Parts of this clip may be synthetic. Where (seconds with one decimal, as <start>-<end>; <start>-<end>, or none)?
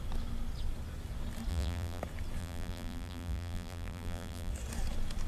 1.5-2.0; 2.4-4.5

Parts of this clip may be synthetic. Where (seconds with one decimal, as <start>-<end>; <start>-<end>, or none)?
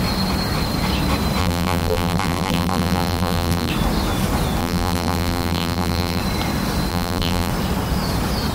1.4-3.7; 4.6-6.2; 6.9-7.5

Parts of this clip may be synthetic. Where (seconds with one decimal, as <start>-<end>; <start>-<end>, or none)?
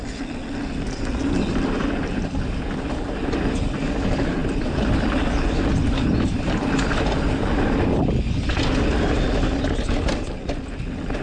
4.4-6.9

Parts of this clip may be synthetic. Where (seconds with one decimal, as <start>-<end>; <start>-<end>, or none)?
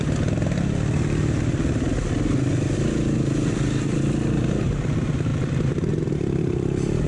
none